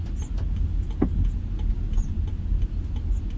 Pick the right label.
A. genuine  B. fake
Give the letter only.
A